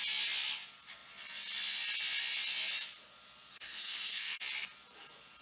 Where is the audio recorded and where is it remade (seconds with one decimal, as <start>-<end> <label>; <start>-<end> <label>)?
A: 0.0-3.5 recorded; 3.5-4.4 remade; 4.4-5.4 recorded